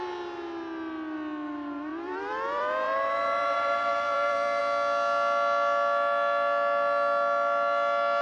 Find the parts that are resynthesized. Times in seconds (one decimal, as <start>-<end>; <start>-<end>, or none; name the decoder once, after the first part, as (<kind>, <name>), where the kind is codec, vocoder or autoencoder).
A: 1.9-4.6 (vocoder, BigVGAN v2)